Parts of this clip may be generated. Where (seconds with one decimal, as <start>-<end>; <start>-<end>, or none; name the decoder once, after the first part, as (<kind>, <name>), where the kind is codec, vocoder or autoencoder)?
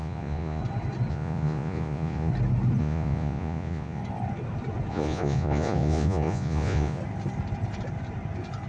0.0-0.6 (vocoder, Vocos); 1.1-2.3; 2.8-4.0; 4.9-7.0